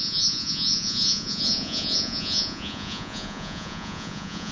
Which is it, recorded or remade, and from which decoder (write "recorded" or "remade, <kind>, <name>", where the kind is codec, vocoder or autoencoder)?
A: remade, vocoder, Vocos